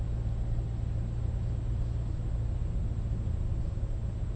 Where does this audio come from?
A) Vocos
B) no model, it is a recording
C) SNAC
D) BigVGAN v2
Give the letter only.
B